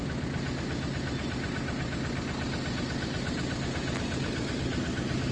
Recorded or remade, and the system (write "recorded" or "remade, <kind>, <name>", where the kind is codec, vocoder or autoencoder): recorded